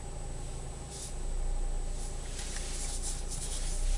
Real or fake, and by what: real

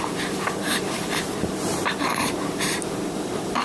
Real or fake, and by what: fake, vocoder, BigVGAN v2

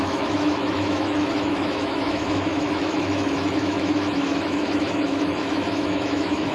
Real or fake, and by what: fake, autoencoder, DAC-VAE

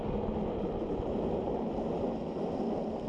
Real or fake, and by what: real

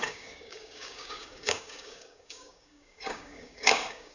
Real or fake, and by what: fake, codec, DAC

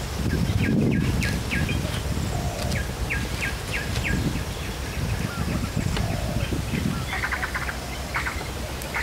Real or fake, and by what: real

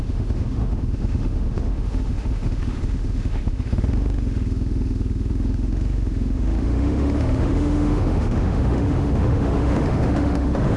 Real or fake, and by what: fake, autoencoder, DAC-VAE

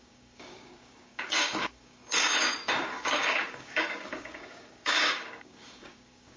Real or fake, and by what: fake, codec, DAC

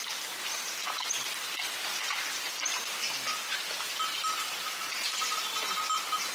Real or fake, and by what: real